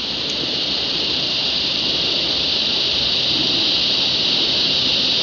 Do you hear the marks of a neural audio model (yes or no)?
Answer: no